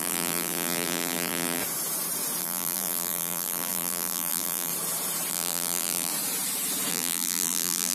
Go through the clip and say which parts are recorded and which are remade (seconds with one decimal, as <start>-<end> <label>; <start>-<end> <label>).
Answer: 0.0-1.6 remade; 1.6-2.4 recorded; 2.4-4.7 remade; 4.7-5.3 recorded; 5.3-6.1 remade; 6.1-6.9 recorded; 6.9-7.9 remade